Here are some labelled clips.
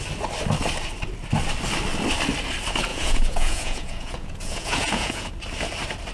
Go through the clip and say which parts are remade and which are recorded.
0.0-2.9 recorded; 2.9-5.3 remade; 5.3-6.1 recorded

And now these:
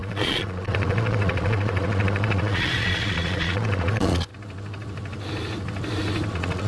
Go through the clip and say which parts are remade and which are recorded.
0.0-4.3 remade; 4.3-6.3 recorded; 6.3-6.7 remade

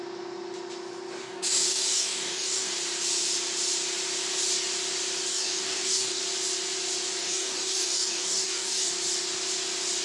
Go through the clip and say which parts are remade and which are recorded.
0.0-1.2 recorded; 1.2-2.7 remade; 2.7-5.3 recorded; 5.3-6.2 remade; 6.2-7.2 recorded; 7.2-8.9 remade; 8.9-10.0 recorded

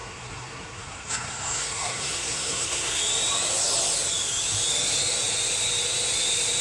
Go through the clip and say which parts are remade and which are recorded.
0.0-3.0 remade; 3.0-6.6 recorded

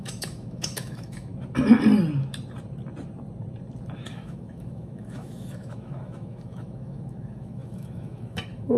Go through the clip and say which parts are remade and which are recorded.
0.0-1.3 remade; 1.3-4.1 recorded; 4.1-8.8 remade

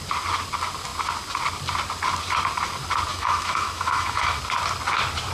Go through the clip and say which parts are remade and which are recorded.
0.0-3.1 recorded; 3.1-4.4 remade; 4.4-5.3 recorded